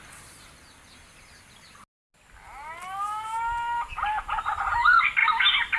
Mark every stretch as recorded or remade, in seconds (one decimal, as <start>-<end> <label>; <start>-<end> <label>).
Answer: 0.0-5.8 recorded